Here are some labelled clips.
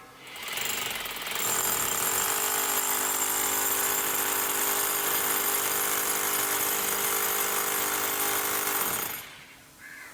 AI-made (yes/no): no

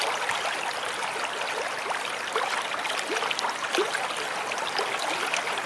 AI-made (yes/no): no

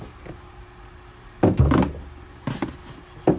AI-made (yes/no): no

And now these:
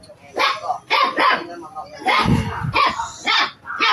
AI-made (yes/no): no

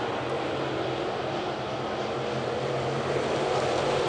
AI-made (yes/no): no